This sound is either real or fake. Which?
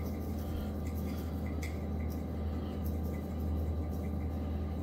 real